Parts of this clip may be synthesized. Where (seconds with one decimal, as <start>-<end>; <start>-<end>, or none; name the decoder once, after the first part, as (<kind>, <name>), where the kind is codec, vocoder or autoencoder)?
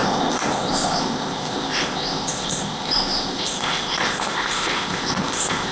0.0-5.7 (codec, ZipCodec)